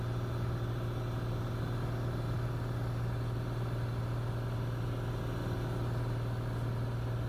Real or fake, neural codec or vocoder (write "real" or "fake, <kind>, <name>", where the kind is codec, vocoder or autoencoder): real